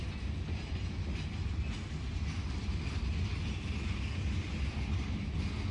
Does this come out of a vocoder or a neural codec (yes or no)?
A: no